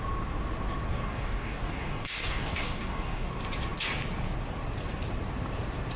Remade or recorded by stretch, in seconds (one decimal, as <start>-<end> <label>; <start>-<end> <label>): 0.0-0.9 recorded; 0.9-3.3 remade; 3.3-6.0 recorded